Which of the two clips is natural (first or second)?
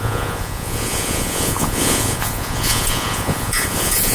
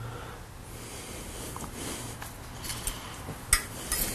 second